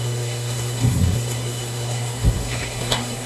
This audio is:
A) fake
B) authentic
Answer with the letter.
A